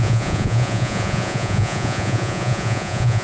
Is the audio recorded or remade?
remade